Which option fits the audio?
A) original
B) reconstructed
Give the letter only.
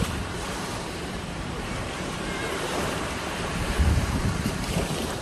B